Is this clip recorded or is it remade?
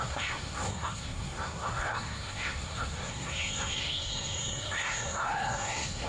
remade